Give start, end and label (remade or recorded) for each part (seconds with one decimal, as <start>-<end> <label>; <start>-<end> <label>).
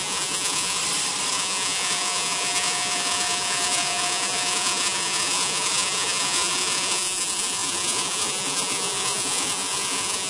0.0-0.8 remade; 0.8-1.3 recorded; 1.3-10.3 remade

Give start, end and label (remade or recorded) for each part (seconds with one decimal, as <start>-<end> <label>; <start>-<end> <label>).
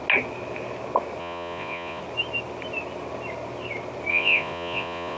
0.0-1.2 recorded; 1.2-2.0 remade; 2.0-4.1 recorded; 4.1-5.2 remade